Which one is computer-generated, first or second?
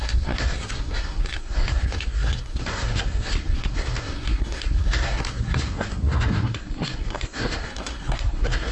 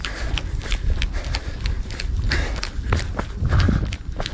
first